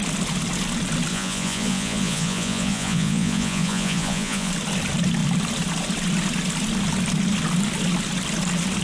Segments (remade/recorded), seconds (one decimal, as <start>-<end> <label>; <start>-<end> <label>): 0.0-1.1 recorded; 1.1-4.5 remade; 4.5-8.8 recorded